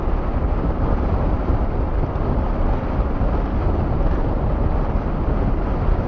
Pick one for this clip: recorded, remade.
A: recorded